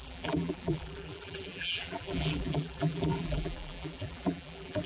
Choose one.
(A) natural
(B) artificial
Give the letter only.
B